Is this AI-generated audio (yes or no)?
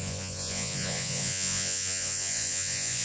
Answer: yes